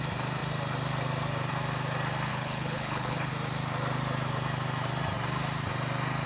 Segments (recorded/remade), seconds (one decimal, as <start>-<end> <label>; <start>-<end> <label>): 0.0-2.3 recorded; 2.3-3.3 remade; 3.3-6.3 recorded